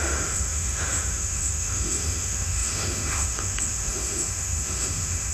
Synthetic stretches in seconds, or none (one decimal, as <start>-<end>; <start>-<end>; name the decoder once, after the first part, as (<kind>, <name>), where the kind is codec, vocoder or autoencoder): 0.0-5.3 (autoencoder, DAC-VAE)